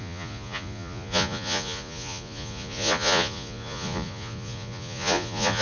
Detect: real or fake fake